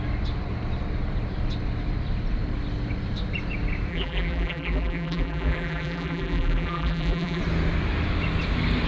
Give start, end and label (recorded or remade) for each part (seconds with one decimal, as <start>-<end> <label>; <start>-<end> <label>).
0.0-3.9 recorded; 3.9-7.4 remade; 7.4-8.9 recorded